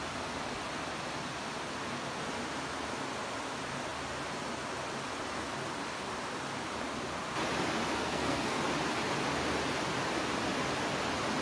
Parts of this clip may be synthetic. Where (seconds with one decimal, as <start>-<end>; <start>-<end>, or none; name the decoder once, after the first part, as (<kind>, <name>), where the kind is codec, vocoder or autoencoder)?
8.0-8.6 (codec, SNAC)